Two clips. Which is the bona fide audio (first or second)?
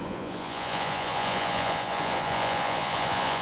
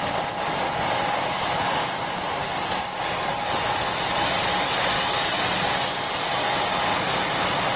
second